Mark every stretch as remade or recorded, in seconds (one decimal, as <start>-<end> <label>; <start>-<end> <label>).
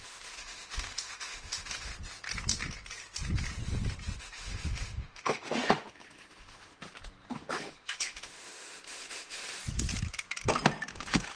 0.0-1.9 remade; 1.9-4.2 recorded; 4.2-6.8 remade; 6.8-7.3 recorded; 7.3-9.6 remade; 9.6-10.9 recorded; 10.9-11.4 remade